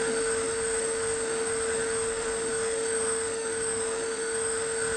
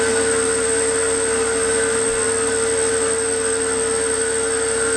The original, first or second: second